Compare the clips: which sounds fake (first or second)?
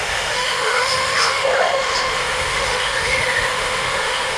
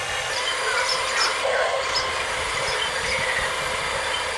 first